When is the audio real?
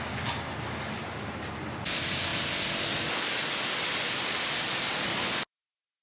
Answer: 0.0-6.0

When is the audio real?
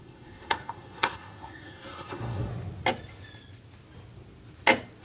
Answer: 2.5-5.0